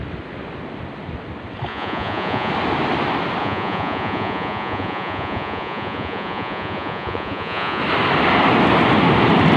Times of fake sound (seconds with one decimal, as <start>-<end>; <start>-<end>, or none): 1.7-2.5; 3.4-7.8